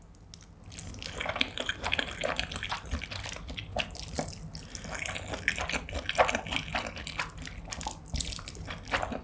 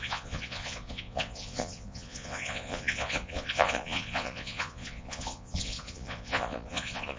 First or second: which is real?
first